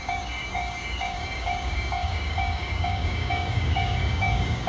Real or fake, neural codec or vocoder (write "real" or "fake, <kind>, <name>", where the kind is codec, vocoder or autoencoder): fake, codec, DAC